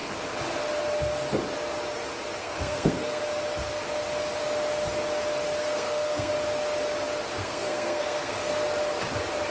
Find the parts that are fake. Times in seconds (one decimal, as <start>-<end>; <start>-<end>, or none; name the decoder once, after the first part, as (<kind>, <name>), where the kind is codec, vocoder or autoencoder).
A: 2.4-3.2 (codec, SNAC); 5.6-6.3; 7.3-8.6